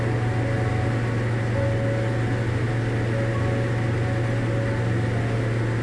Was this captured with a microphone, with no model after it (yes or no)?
yes